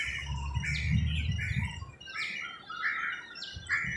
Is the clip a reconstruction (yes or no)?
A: no